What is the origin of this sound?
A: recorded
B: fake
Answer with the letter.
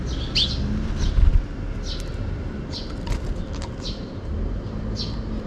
A